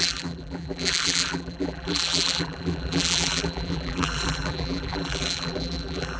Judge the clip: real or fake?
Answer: fake